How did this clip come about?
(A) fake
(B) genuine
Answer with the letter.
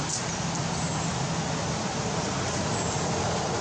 B